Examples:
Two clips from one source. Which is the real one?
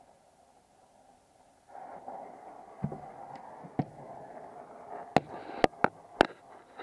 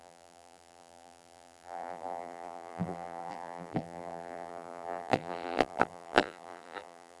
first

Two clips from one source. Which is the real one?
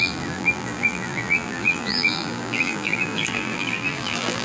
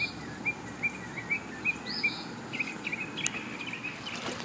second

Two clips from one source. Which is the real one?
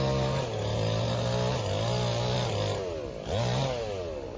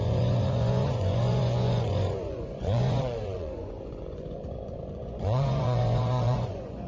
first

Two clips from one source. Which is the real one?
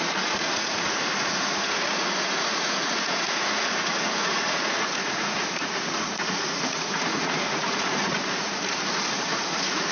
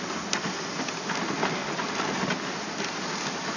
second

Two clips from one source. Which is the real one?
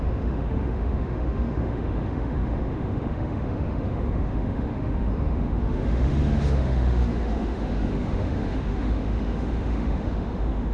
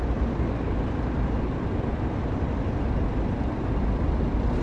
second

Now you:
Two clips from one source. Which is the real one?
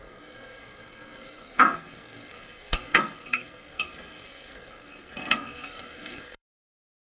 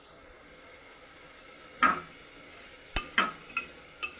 second